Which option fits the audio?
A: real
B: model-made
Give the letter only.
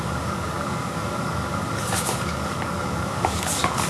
B